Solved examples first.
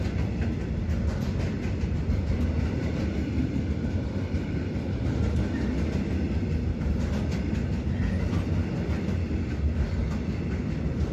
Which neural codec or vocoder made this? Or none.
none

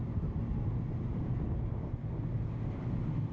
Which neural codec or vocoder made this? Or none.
none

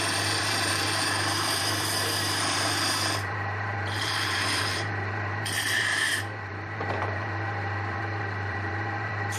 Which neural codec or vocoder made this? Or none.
vocoder, BigVGAN v2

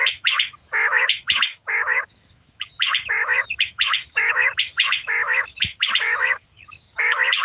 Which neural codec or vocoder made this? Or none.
autoencoder, DAC-VAE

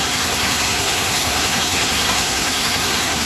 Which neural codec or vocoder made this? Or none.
codec, SNAC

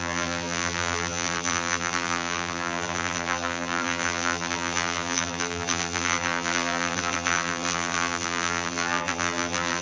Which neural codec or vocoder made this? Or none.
vocoder, BigVGAN v2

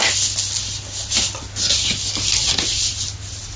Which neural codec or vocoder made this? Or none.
none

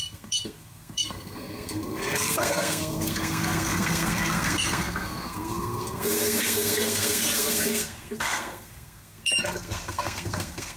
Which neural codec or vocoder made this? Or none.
codec, SNAC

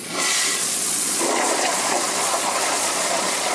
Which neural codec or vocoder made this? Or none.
vocoder, Vocos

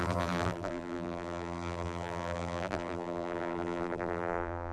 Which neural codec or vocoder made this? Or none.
vocoder, BigVGAN v2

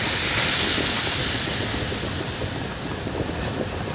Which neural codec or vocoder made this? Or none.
none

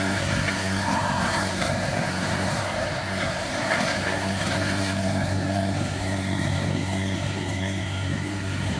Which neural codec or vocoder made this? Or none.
codec, SNAC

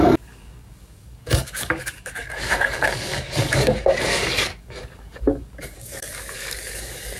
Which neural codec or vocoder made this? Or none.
codec, DAC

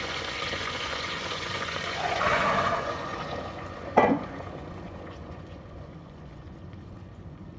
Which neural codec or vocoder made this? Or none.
vocoder, Vocos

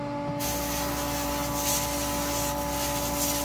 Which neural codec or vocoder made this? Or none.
none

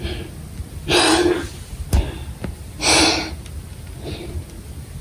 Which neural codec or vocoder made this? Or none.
none